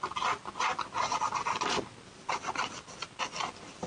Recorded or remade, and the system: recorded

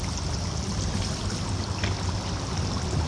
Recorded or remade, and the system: recorded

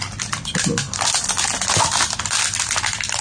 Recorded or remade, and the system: recorded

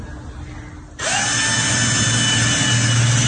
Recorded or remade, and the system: recorded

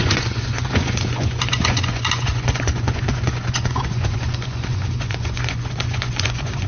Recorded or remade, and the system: remade, vocoder, Vocos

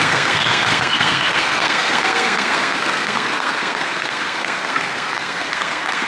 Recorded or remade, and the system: remade, codec, SNAC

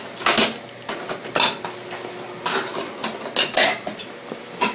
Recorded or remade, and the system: recorded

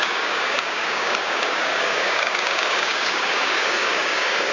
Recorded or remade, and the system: remade, codec, DAC